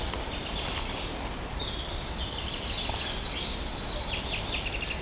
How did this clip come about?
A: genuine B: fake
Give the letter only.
B